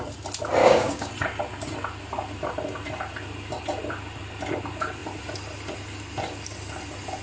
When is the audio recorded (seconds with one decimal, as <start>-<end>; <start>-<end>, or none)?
0.0-0.6; 1.1-7.2